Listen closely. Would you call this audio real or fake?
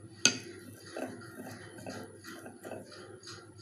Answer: real